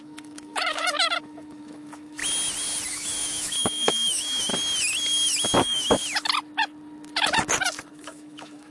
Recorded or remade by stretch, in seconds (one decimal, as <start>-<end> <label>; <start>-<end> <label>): 0.0-2.2 remade; 2.2-2.9 recorded; 2.9-4.5 remade; 4.5-5.6 recorded; 5.6-6.0 remade; 6.0-7.9 recorded; 7.9-8.7 remade